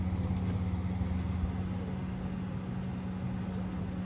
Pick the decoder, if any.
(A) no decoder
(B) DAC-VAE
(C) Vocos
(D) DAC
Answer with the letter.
A